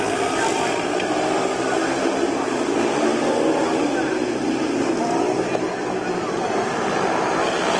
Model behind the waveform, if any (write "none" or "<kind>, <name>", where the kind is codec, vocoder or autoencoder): none